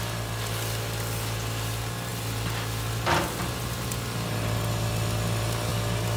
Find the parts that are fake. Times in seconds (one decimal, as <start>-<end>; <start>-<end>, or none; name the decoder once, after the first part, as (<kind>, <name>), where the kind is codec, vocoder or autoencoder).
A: none